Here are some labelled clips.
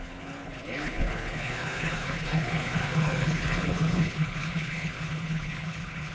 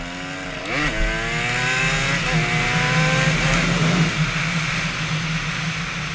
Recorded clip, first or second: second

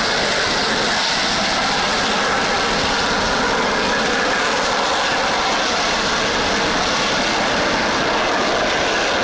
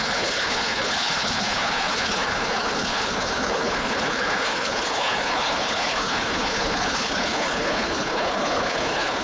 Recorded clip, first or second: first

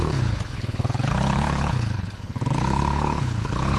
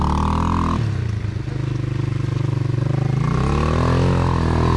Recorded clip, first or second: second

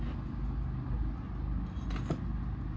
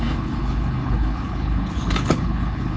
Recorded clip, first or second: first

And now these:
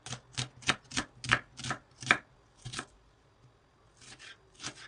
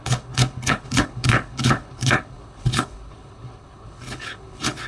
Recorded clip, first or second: first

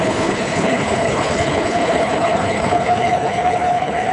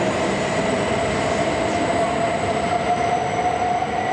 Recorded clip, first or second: second